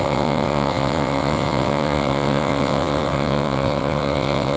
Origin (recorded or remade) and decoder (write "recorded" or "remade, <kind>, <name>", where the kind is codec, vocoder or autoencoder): remade, vocoder, WaveNeXt